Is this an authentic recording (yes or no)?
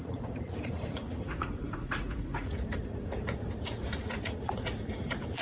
no